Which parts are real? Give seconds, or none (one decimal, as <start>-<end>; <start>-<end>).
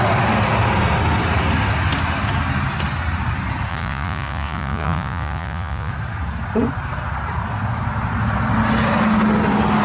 0.0-3.7; 5.9-9.8